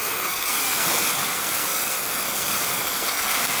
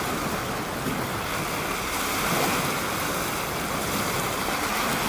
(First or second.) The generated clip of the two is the first